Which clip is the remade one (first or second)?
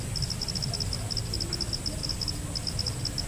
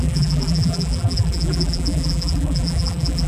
second